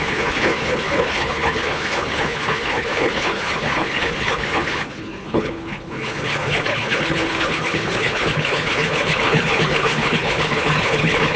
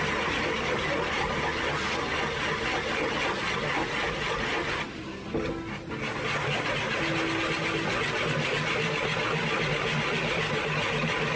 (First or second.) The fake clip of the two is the first